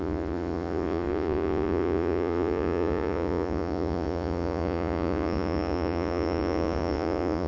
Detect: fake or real fake